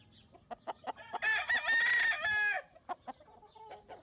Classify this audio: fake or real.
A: real